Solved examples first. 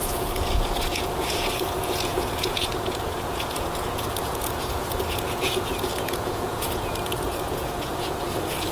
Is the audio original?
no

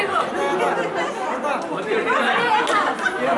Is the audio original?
yes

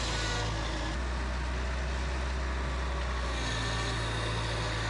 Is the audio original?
yes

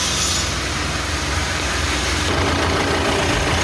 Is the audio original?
yes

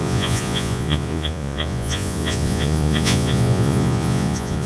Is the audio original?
no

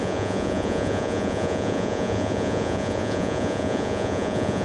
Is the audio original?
no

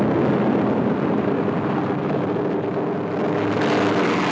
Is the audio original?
yes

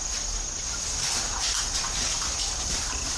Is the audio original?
yes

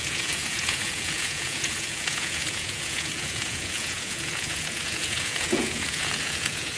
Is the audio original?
no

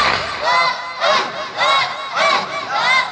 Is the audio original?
yes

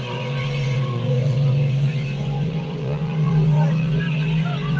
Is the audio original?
no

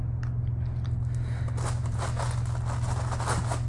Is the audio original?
yes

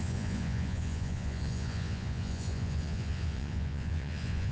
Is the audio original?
no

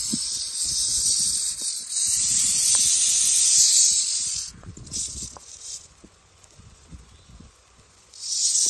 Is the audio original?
no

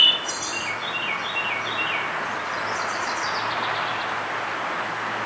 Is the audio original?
yes